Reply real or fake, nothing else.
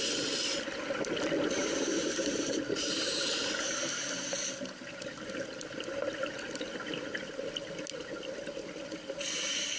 real